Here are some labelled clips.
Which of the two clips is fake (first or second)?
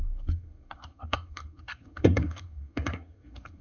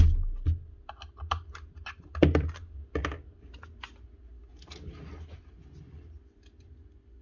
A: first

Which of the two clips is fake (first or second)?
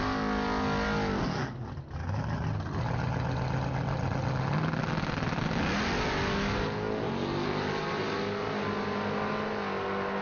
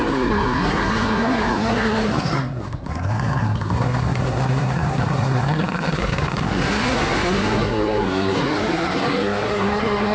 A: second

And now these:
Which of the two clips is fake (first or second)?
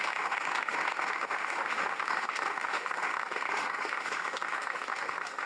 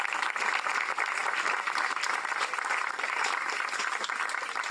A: first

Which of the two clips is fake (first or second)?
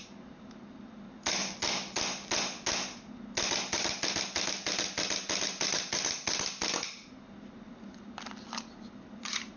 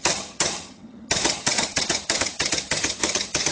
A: second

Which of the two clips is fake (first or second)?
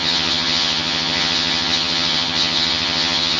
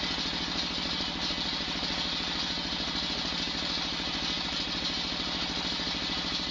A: first